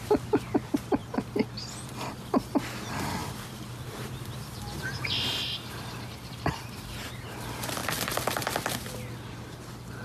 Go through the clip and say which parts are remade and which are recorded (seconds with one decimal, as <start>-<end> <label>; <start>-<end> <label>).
0.0-1.0 recorded; 1.0-2.5 remade; 2.5-3.2 recorded; 3.2-6.6 remade; 6.6-10.0 recorded